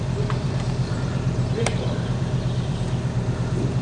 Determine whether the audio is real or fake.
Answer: fake